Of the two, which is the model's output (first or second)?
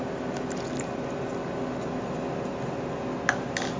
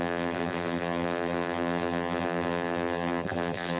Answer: second